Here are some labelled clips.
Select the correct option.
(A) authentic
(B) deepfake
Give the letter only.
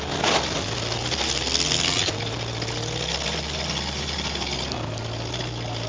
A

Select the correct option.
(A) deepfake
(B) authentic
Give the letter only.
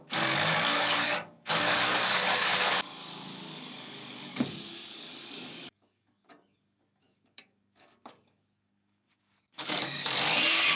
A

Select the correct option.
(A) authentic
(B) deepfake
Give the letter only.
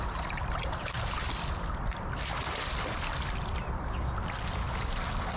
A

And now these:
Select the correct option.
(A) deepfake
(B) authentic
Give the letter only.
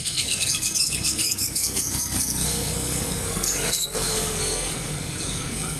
A